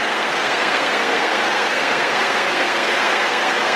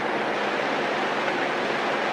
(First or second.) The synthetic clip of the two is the first